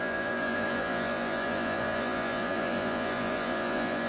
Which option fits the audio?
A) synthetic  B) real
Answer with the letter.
A